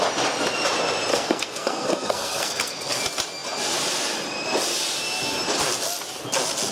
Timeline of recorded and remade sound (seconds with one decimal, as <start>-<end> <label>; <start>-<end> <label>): 0.0-1.1 recorded; 1.1-3.0 remade; 3.0-6.7 recorded